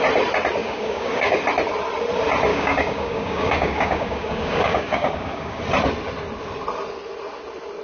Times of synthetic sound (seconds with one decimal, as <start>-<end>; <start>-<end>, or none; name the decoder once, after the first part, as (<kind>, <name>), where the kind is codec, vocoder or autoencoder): 0.6-1.4 (codec, DAC); 2.5-5.6